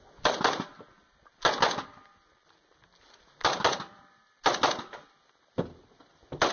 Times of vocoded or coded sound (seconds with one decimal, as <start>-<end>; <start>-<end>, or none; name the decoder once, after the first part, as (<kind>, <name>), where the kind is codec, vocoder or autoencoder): none